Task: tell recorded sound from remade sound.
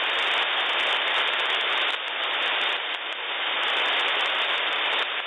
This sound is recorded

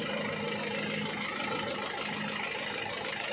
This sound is recorded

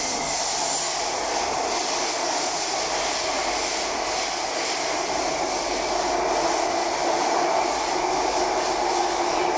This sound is recorded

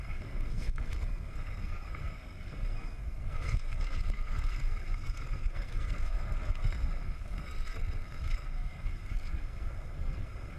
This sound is remade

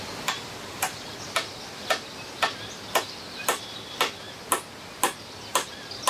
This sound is recorded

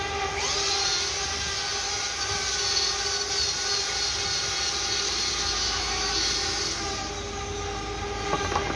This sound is recorded